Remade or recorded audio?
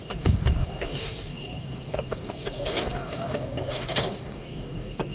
remade